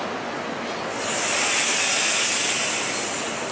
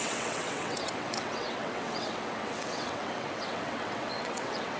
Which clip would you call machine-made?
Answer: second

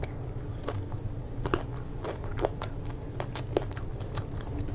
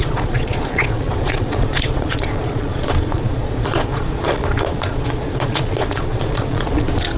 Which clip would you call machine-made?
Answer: second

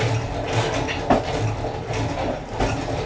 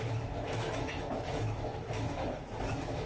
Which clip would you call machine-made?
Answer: second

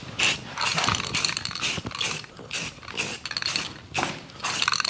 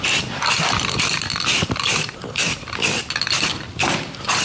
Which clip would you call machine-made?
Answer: second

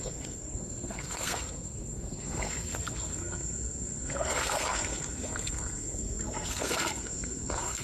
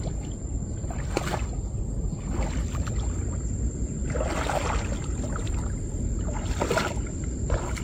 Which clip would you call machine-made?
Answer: first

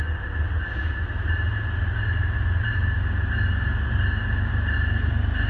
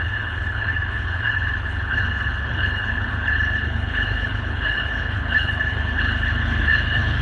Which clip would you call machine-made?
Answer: second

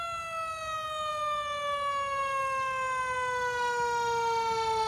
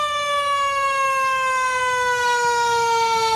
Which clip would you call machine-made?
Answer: second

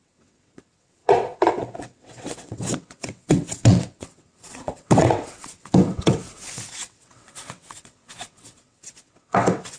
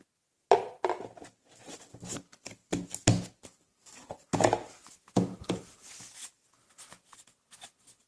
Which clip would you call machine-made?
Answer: first